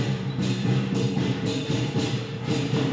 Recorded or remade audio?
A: remade